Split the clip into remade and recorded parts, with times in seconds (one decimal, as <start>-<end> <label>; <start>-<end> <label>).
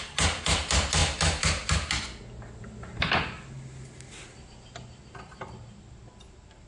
0.0-6.7 recorded